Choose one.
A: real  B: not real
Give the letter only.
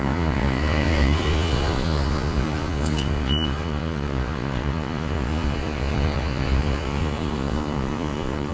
B